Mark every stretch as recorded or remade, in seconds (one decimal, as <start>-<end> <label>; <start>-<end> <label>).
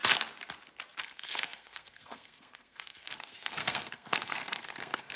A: 0.0-1.0 recorded; 1.0-5.2 remade